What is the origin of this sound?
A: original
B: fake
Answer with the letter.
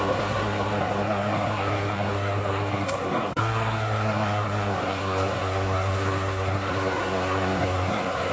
B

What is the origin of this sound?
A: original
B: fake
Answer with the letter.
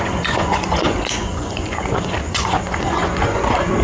B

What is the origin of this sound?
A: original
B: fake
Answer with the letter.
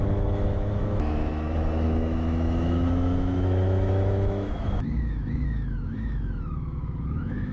B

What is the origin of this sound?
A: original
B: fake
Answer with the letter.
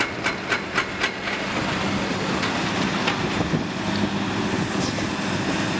A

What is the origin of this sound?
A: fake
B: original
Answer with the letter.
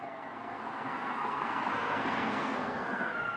A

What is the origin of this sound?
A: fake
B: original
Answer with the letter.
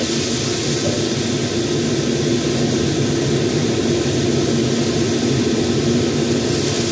B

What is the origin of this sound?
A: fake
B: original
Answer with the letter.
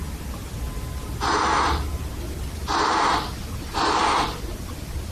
B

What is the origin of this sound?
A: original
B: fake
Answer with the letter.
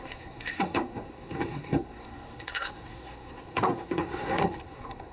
B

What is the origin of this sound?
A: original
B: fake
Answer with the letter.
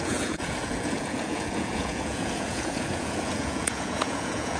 B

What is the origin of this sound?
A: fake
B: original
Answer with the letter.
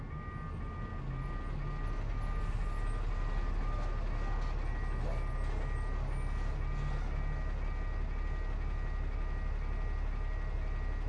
B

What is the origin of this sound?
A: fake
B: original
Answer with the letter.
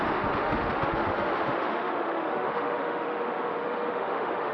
A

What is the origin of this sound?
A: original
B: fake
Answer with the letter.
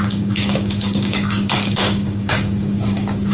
B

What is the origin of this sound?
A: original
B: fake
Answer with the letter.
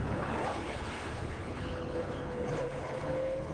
B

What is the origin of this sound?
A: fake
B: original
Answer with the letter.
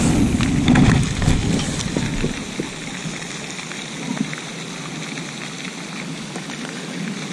B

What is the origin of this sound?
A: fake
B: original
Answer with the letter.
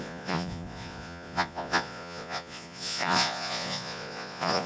A